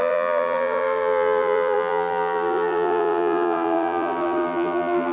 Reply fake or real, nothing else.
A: fake